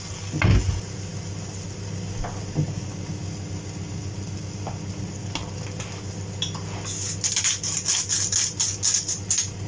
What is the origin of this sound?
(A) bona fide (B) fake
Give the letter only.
A